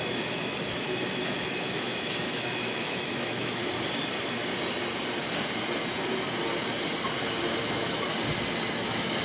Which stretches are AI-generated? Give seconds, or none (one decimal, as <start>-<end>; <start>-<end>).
0.0-3.6; 7.6-8.1; 8.7-9.2